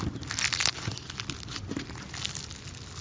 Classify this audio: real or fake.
real